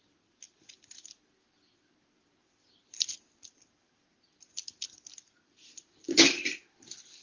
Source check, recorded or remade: recorded